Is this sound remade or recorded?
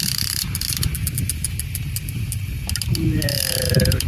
remade